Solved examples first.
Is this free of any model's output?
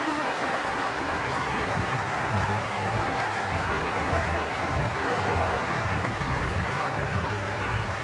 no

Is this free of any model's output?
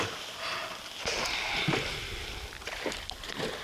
yes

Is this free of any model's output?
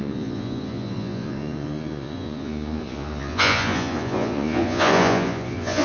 no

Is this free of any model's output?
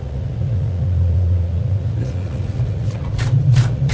no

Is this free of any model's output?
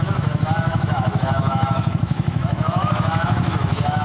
no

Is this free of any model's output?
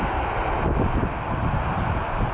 yes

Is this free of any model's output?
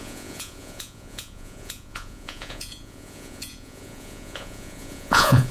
no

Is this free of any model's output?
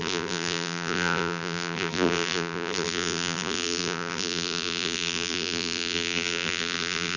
no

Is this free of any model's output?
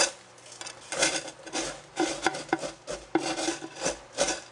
yes